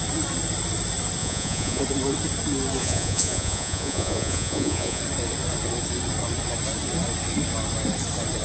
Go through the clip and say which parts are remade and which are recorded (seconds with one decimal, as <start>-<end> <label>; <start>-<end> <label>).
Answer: 0.0-1.2 recorded; 1.2-1.8 remade; 1.8-2.8 recorded; 2.8-5.0 remade; 5.0-8.4 recorded